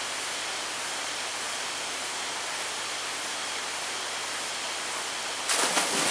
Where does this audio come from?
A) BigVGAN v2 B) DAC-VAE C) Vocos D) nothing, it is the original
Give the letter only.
D